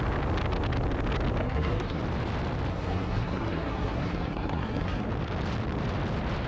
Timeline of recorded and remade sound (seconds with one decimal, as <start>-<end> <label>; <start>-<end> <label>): 0.0-1.4 recorded; 1.4-2.0 remade; 2.0-2.7 recorded; 2.7-5.1 remade; 5.1-6.5 recorded

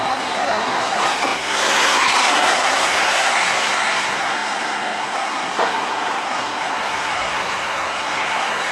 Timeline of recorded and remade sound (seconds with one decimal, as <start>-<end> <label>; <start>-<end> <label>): 0.0-8.7 remade